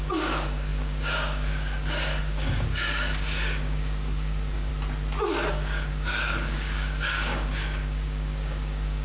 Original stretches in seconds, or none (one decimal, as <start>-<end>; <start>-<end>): 4.7-5.5

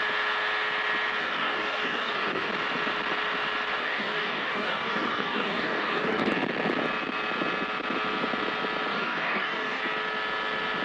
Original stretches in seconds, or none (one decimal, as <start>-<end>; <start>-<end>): 0.0-1.2; 2.5-3.8; 6.3-8.9; 9.8-10.8